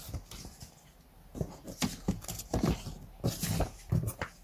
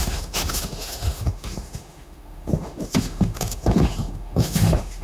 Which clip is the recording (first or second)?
first